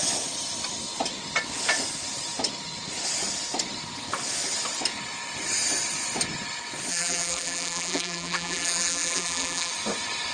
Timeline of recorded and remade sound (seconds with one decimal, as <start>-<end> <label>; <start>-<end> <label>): 0.0-6.9 recorded; 6.9-9.7 remade; 9.7-10.3 recorded